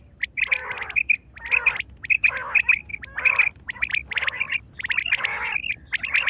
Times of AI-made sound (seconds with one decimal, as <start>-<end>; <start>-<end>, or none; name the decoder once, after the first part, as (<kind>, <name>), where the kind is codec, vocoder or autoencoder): none